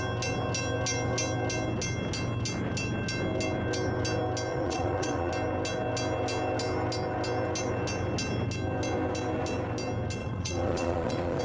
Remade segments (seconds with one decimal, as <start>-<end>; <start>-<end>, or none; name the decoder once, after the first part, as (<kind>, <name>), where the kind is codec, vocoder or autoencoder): 4.5-5.3 (vocoder, Vocos); 10.2-11.4